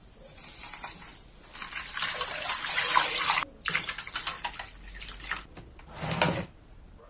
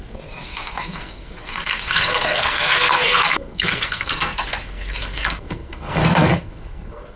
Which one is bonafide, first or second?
first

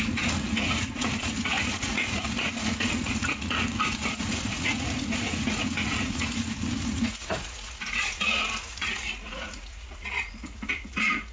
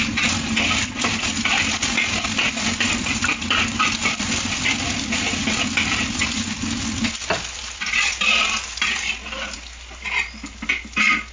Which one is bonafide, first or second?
second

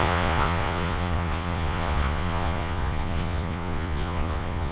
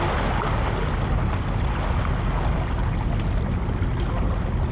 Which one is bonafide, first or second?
second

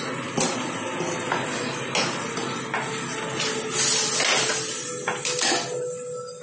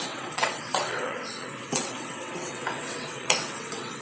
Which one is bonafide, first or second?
first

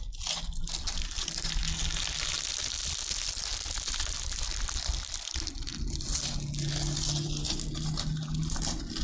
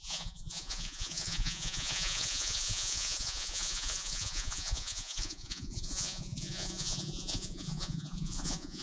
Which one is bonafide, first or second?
first